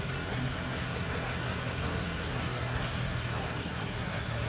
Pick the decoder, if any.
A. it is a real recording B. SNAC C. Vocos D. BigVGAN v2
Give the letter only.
B